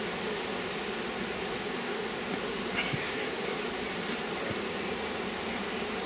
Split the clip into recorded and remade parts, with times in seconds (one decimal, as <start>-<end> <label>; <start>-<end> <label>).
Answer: 0.0-3.0 recorded; 3.0-3.6 remade; 3.6-6.1 recorded